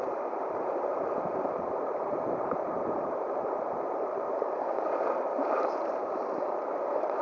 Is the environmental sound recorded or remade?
remade